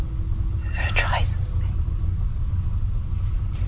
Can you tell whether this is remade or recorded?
recorded